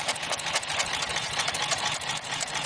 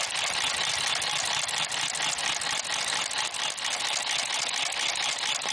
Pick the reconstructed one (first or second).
first